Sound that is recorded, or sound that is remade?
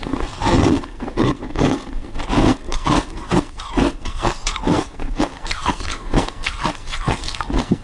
remade